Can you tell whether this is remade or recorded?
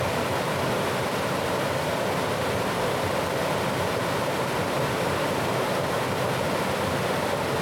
recorded